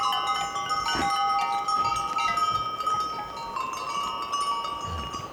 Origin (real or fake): real